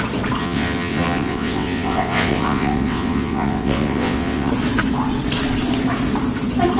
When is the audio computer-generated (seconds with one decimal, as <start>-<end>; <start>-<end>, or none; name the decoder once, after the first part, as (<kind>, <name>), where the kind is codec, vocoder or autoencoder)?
0.4-4.5 (vocoder, WaveNeXt)

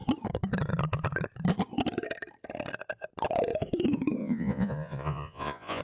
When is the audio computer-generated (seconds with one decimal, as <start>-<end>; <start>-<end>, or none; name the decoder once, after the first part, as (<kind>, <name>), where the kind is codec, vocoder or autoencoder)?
4.2-5.8 (vocoder, Vocos)

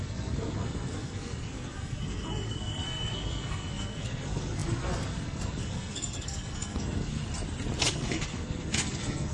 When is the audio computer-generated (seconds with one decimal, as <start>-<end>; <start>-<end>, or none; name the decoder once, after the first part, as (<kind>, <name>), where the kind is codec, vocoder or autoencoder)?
0.0-7.2 (codec, SNAC); 7.8-9.3

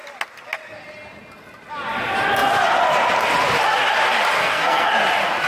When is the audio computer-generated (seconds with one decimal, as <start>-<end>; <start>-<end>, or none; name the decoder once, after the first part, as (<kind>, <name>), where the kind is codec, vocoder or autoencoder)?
4.4-4.9 (codec, SNAC)

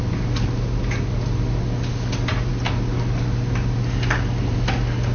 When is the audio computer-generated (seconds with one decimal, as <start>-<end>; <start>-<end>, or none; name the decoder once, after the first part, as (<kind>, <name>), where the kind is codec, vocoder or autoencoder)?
none

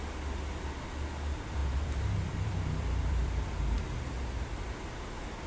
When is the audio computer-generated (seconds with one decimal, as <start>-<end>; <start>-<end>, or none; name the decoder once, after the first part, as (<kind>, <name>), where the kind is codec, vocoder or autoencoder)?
1.6-3.5 (vocoder, BigVGAN v2)